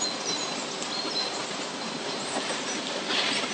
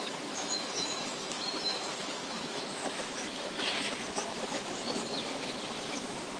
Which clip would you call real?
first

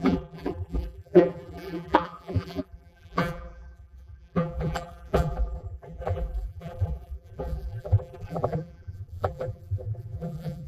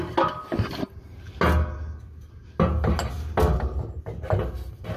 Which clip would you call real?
second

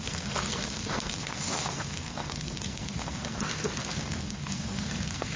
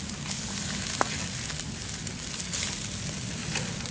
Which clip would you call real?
second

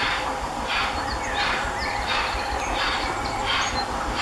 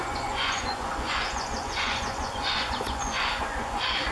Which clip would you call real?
first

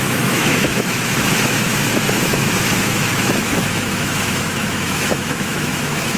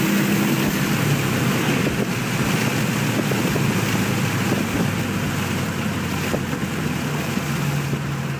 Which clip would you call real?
second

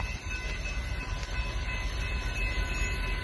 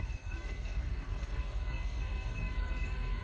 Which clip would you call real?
first